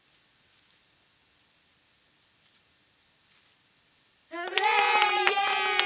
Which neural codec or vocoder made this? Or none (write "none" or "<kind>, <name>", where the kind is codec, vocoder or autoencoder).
none